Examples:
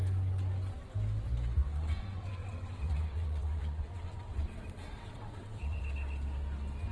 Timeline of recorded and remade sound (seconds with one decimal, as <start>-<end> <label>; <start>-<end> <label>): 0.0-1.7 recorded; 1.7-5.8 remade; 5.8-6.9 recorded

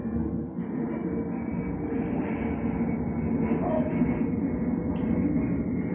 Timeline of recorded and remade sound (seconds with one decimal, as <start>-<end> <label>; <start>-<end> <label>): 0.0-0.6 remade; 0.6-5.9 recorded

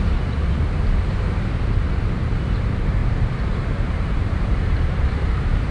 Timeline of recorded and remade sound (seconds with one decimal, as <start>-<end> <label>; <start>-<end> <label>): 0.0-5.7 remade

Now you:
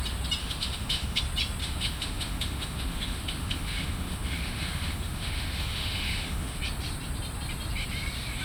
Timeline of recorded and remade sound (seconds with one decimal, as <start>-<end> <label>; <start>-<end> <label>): 0.0-0.4 recorded; 0.4-1.2 remade; 1.2-1.6 recorded; 1.6-6.6 remade; 6.6-8.4 recorded

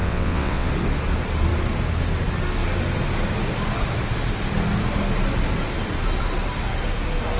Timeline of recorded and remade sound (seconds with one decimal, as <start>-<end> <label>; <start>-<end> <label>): 0.0-0.7 remade; 0.7-7.4 recorded

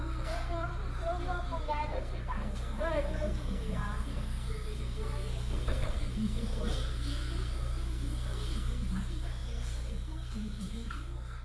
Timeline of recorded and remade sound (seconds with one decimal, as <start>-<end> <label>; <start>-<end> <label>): 0.0-0.7 remade; 0.7-1.6 recorded; 1.6-11.4 remade

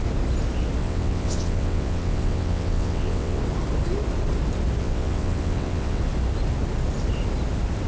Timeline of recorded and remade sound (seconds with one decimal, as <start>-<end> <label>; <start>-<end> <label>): 0.0-0.8 recorded; 0.8-3.4 remade; 3.4-4.8 recorded; 4.8-6.0 remade; 6.0-7.9 recorded

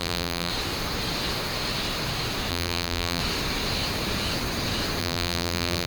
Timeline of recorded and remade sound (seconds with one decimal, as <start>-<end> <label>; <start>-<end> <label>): 0.0-0.5 remade; 0.5-2.5 recorded; 2.5-3.2 remade; 3.2-5.0 recorded; 5.0-5.9 remade